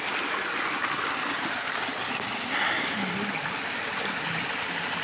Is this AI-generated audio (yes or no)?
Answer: no